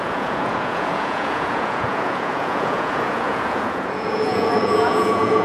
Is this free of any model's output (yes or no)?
no